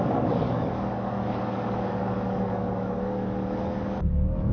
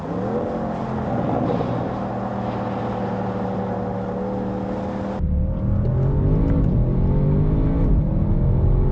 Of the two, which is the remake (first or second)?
first